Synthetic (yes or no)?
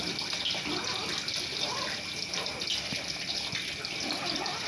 no